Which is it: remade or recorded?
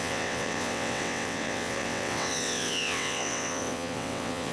remade